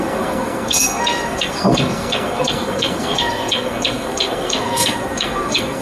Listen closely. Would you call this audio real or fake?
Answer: fake